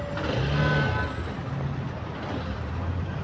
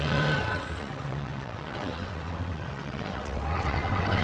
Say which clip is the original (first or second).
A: first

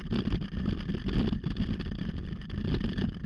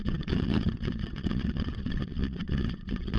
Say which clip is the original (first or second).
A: first